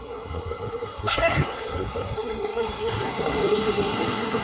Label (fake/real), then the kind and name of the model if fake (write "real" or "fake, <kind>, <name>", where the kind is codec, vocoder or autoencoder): fake, codec, SNAC